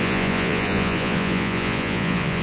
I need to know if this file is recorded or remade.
remade